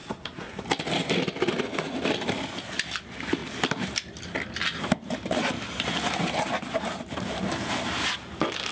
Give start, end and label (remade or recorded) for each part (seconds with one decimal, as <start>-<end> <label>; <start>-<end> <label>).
0.0-0.6 remade; 0.6-8.7 recorded

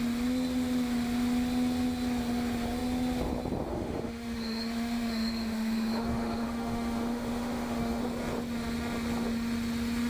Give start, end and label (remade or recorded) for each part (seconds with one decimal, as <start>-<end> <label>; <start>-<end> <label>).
0.0-3.7 recorded; 3.7-8.0 remade; 8.0-10.1 recorded

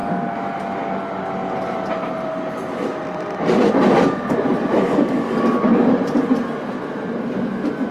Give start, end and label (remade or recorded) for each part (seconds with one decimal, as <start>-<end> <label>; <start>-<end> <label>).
0.0-4.7 recorded; 4.7-5.9 remade; 5.9-7.9 recorded

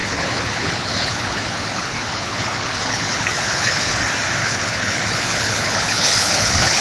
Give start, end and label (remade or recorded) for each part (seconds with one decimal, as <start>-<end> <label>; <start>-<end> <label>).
0.0-4.0 remade; 4.0-4.4 recorded; 4.4-6.8 remade

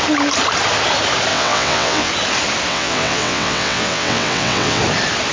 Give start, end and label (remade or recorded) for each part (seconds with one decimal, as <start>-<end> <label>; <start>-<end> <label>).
0.0-1.3 recorded; 1.3-2.1 remade; 2.1-2.7 recorded; 2.7-4.8 remade; 4.8-5.3 recorded

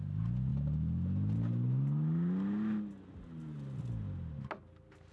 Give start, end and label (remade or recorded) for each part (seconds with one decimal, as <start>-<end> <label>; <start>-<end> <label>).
0.0-5.1 recorded

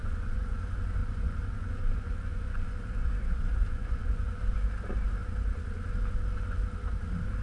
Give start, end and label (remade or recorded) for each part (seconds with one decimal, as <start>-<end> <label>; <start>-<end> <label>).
0.0-0.6 remade; 0.6-1.0 recorded; 1.0-4.4 remade; 4.4-7.4 recorded

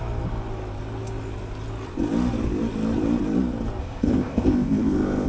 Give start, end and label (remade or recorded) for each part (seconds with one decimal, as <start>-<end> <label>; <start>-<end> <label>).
0.0-3.8 recorded; 3.8-5.3 remade